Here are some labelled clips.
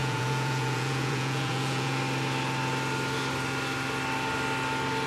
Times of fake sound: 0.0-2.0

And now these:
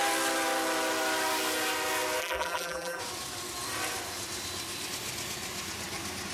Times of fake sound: 2.2-3.0

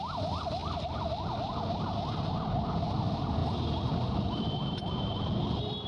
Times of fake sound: none

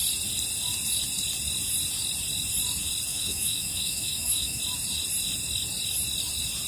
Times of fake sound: 3.1-4.6

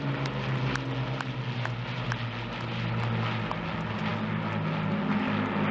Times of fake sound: none

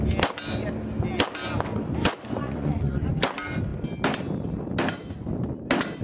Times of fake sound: 2.0-3.1